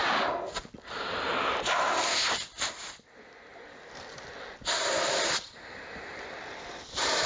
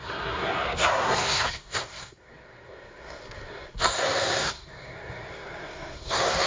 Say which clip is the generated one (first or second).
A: second